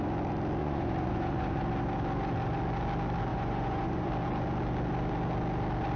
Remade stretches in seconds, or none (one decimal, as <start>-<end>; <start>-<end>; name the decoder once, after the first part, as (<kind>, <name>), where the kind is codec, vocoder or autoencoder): 0.6-1.6 (vocoder, Vocos); 3.3-4.1